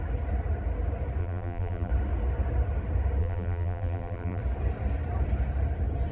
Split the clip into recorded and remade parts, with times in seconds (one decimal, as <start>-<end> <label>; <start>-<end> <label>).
0.0-1.2 recorded; 1.2-1.9 remade; 1.9-3.2 recorded; 3.2-4.4 remade; 4.4-6.1 recorded